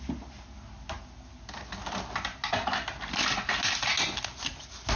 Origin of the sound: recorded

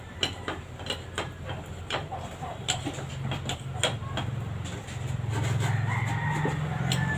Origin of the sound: recorded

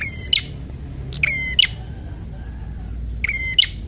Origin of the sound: recorded